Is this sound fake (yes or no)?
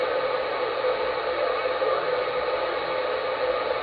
no